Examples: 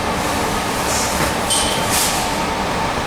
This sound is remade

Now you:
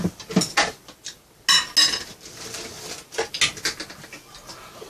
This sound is recorded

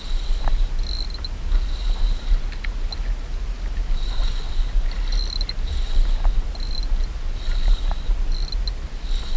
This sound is recorded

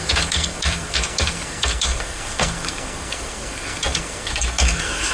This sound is remade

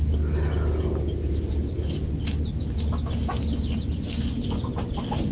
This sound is recorded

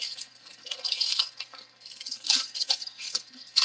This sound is remade